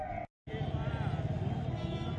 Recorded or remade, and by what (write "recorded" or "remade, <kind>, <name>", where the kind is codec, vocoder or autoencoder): recorded